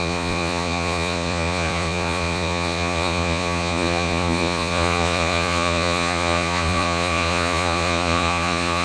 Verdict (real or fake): fake